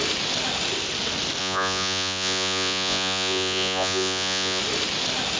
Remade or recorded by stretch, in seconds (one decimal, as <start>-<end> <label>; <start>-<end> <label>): 0.0-1.4 recorded; 1.4-4.6 remade; 4.6-5.4 recorded